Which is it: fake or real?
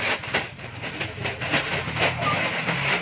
fake